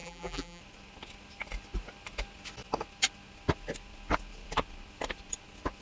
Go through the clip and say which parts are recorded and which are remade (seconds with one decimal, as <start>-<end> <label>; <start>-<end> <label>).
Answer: 0.0-0.6 remade; 0.6-5.8 recorded